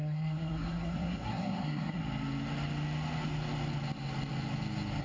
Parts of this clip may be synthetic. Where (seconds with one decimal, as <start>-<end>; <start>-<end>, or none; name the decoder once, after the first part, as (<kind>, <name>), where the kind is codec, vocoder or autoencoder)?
0.0-2.0 (codec, SNAC)